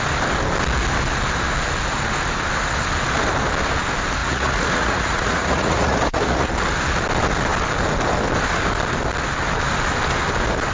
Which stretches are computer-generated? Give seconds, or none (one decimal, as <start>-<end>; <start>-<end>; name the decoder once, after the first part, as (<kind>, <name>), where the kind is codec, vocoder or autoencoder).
4.2-6.5 (vocoder, Vocos)